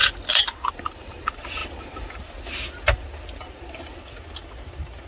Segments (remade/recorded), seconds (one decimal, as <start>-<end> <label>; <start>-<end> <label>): 0.0-5.1 recorded